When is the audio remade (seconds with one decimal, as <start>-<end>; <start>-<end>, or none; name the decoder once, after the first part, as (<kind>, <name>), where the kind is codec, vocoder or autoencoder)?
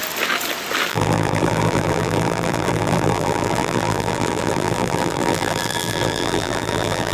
0.9-7.1 (vocoder, BigVGAN v2)